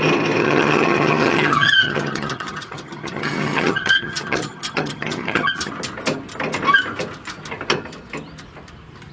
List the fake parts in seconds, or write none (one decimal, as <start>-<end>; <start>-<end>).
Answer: 0.4-5.7